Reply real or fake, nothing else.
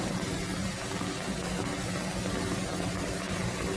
real